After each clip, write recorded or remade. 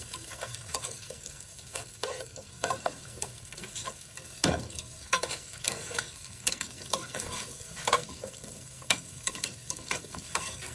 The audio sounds remade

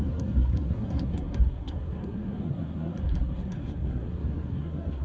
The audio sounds remade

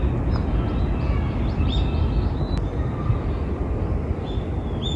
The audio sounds recorded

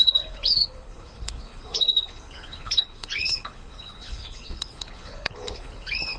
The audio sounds remade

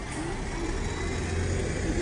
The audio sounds recorded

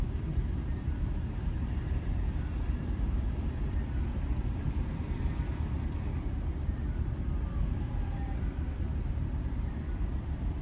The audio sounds remade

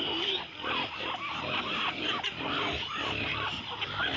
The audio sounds recorded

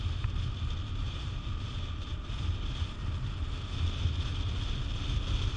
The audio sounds recorded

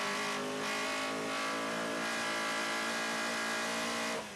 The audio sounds recorded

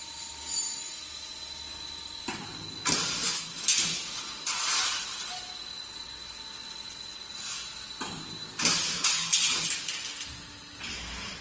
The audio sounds recorded